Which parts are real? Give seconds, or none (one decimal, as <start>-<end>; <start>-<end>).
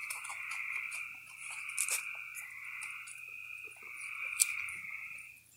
2.0-5.6